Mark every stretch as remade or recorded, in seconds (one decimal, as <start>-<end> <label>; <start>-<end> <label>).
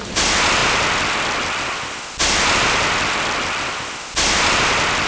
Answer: 0.0-5.1 recorded